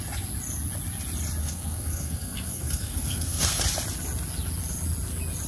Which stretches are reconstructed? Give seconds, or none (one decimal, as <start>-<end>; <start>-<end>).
1.4-3.6